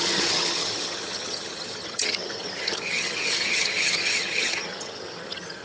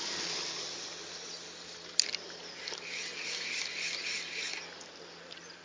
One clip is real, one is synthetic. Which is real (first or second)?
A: second